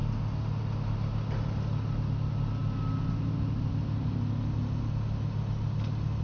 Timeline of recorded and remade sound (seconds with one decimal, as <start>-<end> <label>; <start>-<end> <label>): 0.0-6.2 recorded